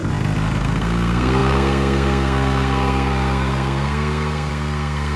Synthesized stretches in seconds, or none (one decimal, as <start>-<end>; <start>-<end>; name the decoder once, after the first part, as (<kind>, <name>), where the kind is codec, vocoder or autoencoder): 0.6-5.2 (codec, SNAC)